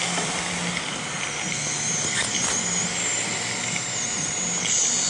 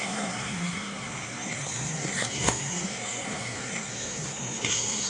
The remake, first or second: second